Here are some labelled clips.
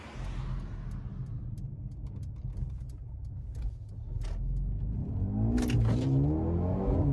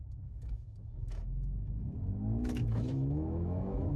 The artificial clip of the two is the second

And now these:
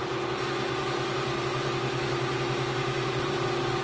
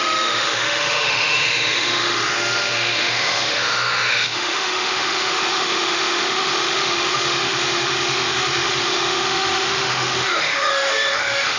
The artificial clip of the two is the second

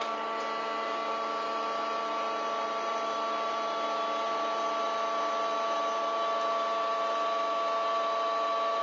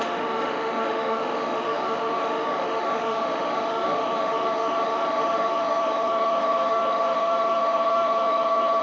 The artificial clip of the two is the second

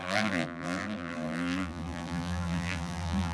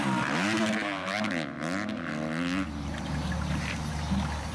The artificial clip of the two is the first